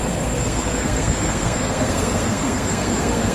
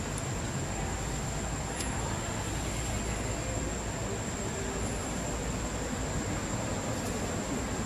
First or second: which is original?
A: second